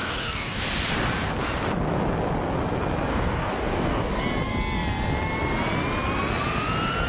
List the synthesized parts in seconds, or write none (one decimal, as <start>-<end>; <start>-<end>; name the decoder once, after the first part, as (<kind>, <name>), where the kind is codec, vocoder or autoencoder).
0.0-0.6 (codec, DAC); 3.1-4.2